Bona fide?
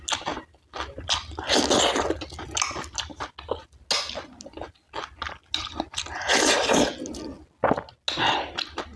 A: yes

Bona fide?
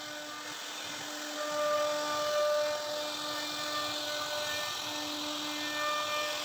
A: yes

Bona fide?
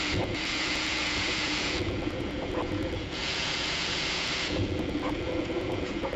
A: no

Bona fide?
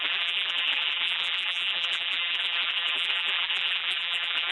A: no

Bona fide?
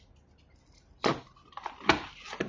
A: yes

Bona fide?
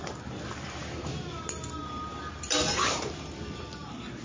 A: yes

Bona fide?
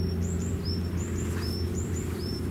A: no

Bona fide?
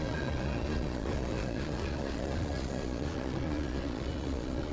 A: no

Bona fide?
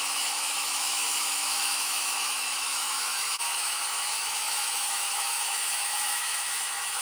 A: no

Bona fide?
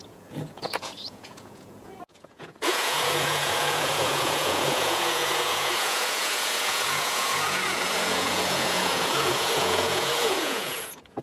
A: no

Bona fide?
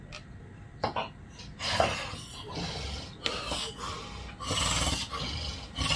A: yes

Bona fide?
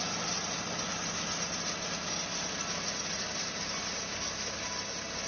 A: yes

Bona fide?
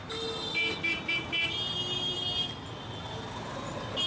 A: yes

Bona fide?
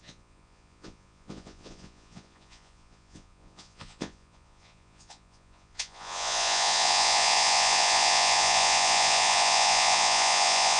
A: no